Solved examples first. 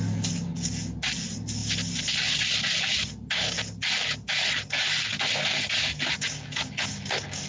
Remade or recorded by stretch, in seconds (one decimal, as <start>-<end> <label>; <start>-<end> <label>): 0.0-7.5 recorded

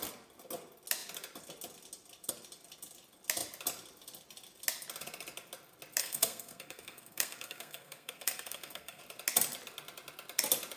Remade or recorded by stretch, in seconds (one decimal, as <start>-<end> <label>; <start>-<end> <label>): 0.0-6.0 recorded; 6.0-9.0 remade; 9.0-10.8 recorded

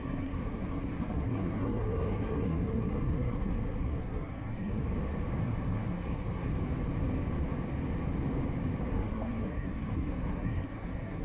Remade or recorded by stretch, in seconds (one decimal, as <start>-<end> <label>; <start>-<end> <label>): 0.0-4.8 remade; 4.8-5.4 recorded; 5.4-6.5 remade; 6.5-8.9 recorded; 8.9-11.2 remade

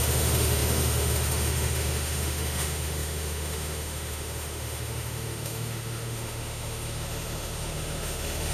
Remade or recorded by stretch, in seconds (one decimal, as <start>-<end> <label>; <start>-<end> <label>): 0.0-8.5 remade